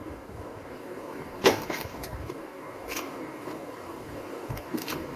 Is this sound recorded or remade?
remade